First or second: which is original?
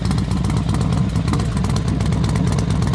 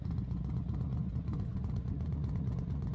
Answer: first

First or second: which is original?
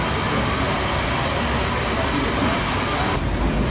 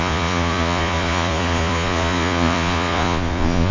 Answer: first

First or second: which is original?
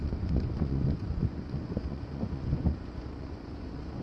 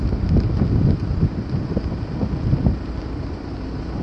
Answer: second